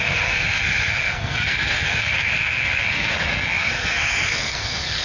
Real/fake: fake